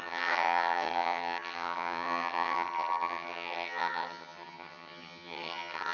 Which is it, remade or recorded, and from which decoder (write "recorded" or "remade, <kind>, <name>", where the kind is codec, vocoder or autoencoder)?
remade, vocoder, HiFi-GAN